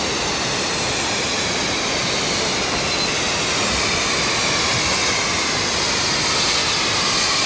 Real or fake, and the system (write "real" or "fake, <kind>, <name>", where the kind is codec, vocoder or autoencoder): real